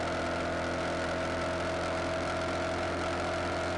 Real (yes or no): yes